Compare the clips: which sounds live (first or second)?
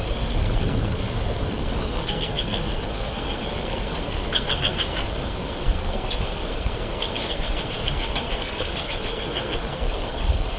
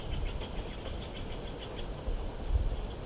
second